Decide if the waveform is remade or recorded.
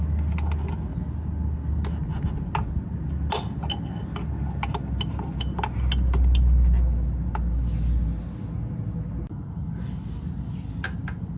recorded